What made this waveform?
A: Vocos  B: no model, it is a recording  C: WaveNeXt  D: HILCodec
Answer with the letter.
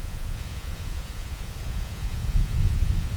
A